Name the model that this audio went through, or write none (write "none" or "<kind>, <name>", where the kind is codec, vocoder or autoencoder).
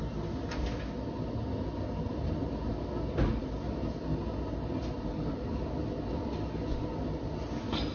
none